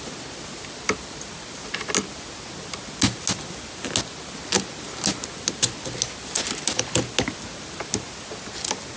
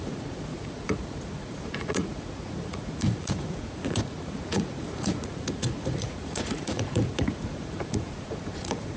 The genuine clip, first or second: first